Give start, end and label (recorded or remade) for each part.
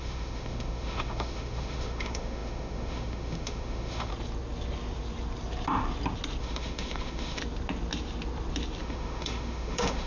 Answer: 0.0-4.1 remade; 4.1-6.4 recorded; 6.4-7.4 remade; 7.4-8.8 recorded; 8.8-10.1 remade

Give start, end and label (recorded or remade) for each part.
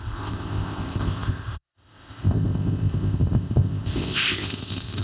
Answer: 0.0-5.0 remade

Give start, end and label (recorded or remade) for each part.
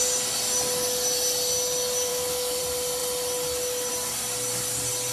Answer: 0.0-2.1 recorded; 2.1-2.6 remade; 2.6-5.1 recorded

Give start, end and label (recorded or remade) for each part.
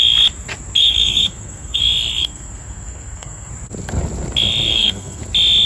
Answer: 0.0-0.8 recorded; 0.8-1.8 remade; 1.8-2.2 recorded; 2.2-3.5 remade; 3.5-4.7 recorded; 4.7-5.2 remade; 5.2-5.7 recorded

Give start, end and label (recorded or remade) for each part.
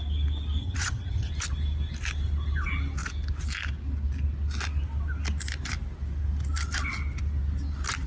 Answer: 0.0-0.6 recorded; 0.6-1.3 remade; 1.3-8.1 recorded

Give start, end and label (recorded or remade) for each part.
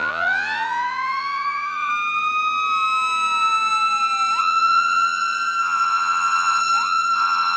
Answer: 0.0-1.9 remade; 1.9-4.4 recorded; 4.4-7.6 remade